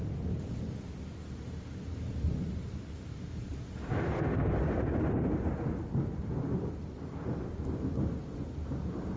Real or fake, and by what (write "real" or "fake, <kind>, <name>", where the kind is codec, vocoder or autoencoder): real